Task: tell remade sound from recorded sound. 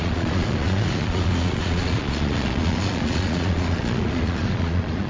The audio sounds remade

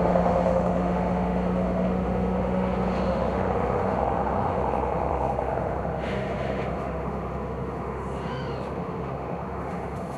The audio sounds remade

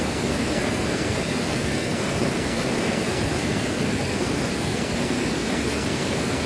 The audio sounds remade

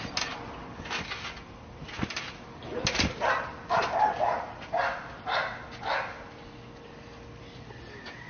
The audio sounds recorded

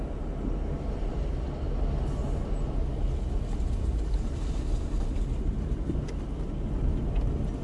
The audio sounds recorded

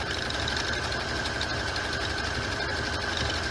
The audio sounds recorded